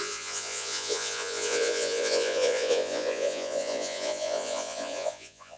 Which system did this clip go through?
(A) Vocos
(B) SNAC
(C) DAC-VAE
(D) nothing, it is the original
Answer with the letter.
A